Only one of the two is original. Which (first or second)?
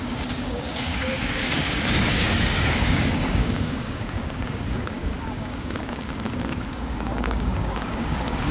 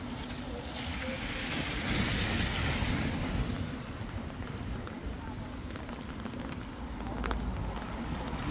second